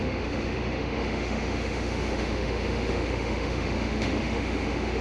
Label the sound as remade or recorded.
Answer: remade